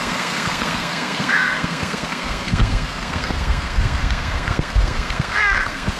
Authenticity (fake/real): fake